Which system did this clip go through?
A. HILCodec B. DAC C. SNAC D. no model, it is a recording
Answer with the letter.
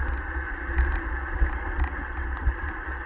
D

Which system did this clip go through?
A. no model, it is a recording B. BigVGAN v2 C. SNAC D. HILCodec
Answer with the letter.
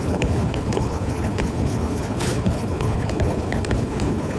D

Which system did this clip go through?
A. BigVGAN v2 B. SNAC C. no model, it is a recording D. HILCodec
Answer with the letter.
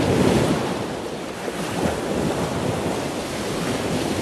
C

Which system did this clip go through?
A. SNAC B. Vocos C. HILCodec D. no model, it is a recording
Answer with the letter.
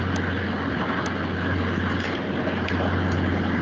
D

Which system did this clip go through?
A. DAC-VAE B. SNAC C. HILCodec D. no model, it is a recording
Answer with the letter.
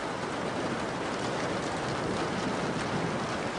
D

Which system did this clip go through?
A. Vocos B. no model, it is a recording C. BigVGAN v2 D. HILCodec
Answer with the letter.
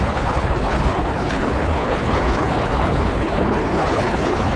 D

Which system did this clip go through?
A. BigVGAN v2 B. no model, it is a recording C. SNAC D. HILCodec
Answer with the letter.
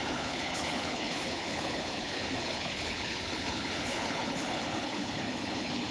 D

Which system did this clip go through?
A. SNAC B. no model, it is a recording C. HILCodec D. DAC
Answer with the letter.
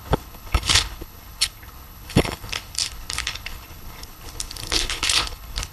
C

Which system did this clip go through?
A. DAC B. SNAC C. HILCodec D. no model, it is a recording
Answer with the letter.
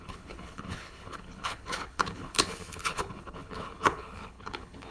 C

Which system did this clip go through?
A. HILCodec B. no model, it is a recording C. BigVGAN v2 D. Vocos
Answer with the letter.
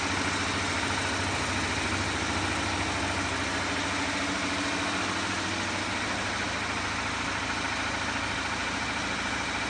B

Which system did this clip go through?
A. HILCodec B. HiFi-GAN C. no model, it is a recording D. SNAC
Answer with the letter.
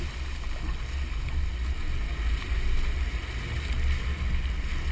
C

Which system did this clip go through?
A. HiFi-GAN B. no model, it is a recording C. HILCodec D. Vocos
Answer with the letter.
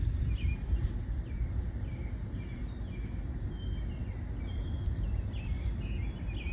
B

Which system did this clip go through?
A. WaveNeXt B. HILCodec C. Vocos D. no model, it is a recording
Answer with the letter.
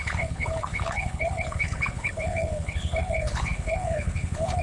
B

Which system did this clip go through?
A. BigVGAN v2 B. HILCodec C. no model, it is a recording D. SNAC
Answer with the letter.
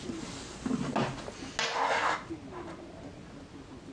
C